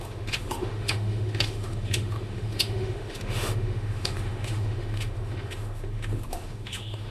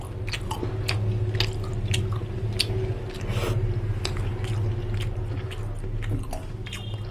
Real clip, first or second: second